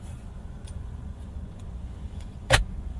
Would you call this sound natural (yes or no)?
no